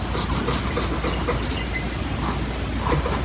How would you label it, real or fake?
real